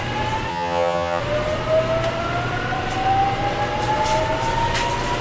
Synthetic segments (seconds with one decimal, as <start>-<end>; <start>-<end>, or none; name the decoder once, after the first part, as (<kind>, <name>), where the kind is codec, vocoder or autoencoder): 0.5-1.2 (vocoder, HiFi-GAN)